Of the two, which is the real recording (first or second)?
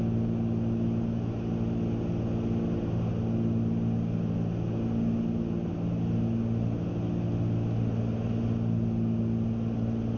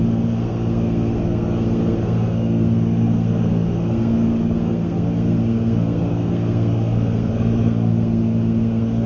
first